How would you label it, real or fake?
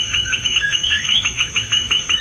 fake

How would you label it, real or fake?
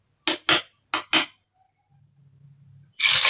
real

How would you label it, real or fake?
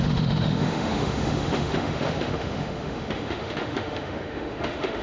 fake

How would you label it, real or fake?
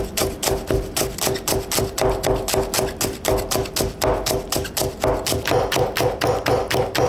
real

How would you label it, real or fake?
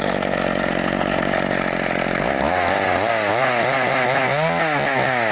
real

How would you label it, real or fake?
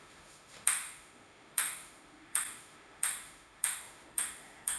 fake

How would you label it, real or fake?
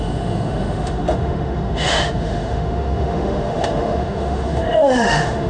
fake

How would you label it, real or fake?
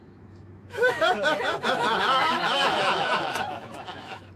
fake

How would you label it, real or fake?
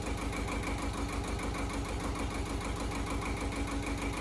real